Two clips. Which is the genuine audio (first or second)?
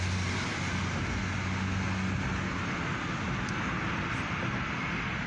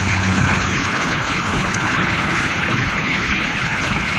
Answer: first